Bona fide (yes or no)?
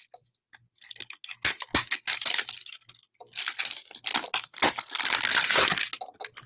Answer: yes